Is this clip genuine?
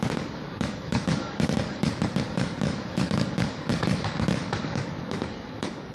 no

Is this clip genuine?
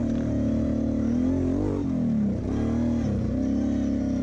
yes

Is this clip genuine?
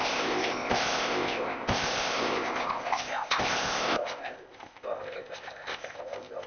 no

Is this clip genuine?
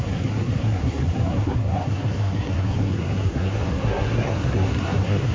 no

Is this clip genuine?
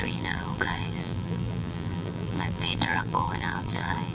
no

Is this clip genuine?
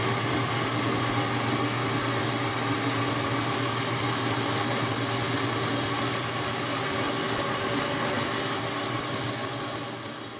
yes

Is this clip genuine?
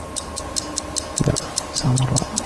no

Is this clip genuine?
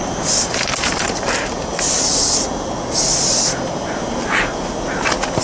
yes